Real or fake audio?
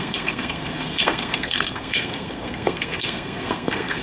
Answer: fake